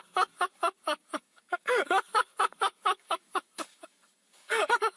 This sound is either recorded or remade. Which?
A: remade